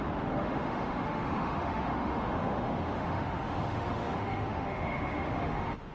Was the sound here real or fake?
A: fake